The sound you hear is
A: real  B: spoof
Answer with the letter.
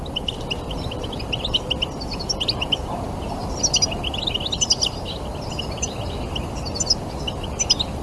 A